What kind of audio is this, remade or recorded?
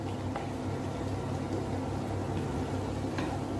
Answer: recorded